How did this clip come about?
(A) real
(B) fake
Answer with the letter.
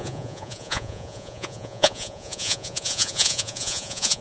B